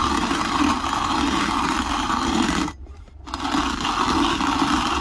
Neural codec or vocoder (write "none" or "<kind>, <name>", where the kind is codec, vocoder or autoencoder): none